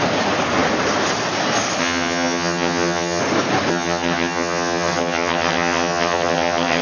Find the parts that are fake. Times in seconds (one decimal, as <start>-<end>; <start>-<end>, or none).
1.8-3.2; 3.7-6.8

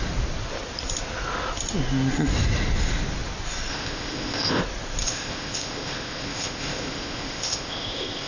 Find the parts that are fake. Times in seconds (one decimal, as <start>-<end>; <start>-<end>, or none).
3.7-4.6; 5.0-8.3